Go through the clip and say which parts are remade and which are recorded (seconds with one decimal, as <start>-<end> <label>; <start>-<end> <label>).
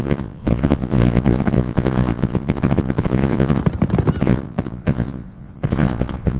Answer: 0.0-3.6 remade; 3.6-4.2 recorded; 4.2-6.4 remade